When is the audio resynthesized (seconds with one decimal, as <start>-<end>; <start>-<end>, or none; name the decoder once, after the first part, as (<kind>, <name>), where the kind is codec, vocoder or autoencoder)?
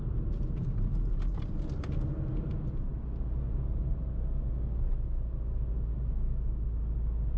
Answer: none